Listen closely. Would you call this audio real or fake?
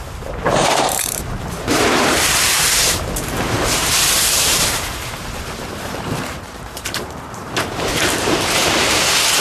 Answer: fake